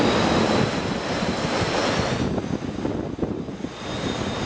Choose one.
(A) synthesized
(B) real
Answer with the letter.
B